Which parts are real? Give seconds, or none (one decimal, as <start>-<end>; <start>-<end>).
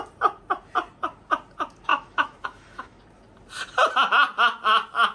0.0-1.9; 3.0-5.1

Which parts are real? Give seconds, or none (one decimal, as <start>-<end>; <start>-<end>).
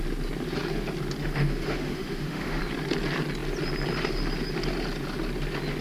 0.0-1.2; 2.6-5.8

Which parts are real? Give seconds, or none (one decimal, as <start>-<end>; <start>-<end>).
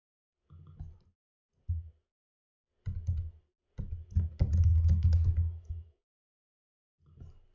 0.0-4.7; 6.5-7.5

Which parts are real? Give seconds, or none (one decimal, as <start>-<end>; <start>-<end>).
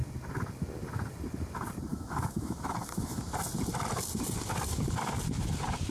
0.0-1.9; 3.2-5.9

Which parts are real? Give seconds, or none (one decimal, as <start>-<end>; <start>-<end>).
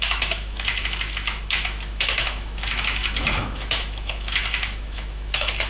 none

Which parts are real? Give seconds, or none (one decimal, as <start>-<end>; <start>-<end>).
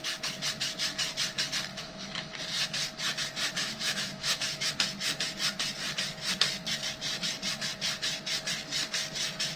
0.0-1.7; 2.4-3.6; 4.7-9.6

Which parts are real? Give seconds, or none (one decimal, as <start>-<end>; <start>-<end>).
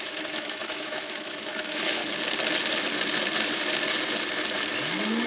2.0-5.3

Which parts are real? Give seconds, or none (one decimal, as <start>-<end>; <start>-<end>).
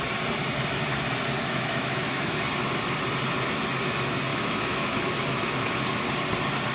0.0-1.4; 2.3-4.3; 5.7-6.7